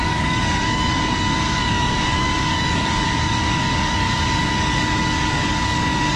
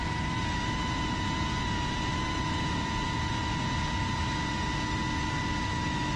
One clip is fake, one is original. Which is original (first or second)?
second